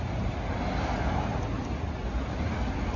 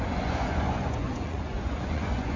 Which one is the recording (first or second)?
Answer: first